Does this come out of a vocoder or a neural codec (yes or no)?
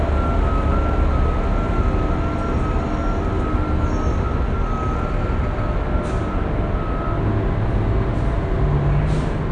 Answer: no